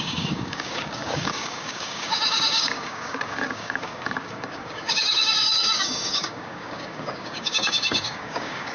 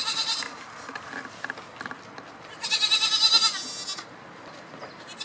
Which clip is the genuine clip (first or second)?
second